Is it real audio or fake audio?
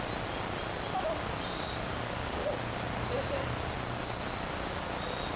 real